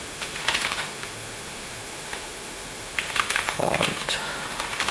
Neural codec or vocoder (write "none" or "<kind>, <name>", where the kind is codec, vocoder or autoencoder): autoencoder, DAC-VAE